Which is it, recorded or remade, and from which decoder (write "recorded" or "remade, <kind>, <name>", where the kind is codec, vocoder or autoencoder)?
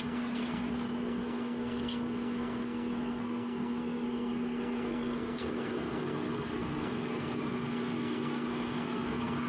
remade, codec, SNAC